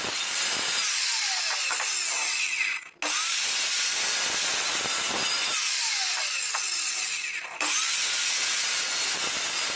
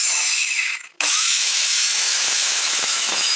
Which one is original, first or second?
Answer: first